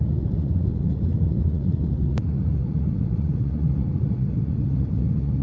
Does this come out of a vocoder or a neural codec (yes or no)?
yes